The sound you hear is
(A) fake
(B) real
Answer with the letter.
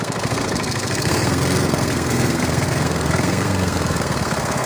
A